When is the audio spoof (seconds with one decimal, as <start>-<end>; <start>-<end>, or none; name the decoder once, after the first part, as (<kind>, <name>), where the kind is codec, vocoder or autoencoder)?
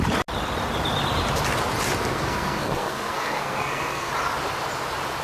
2.0-4.1 (codec, SNAC)